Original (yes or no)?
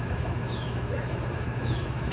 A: no